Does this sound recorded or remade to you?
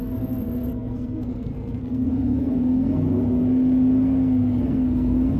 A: remade